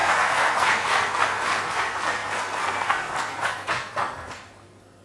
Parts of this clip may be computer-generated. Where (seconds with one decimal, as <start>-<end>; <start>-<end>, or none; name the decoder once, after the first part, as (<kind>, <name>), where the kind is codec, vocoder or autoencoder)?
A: 0.0-5.0 (codec, SNAC)